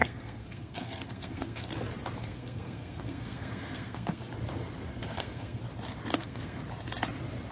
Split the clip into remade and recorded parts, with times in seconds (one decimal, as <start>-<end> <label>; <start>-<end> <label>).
0.0-1.7 remade; 1.7-2.2 recorded; 2.2-4.2 remade; 4.2-4.9 recorded; 4.9-5.6 remade; 5.6-6.1 recorded; 6.1-6.6 remade; 6.6-7.5 recorded